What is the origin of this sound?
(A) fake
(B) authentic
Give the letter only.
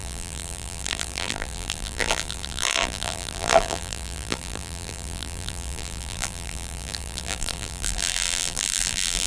A